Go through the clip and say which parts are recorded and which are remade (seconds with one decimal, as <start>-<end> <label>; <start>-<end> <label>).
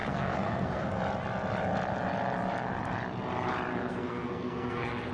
0.0-1.0 remade; 1.0-3.7 recorded; 3.7-5.1 remade